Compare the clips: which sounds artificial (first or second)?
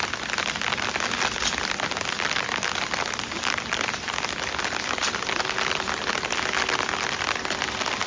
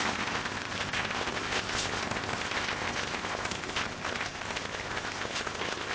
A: second